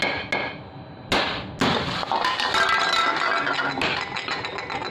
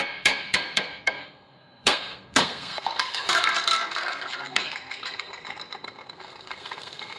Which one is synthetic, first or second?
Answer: second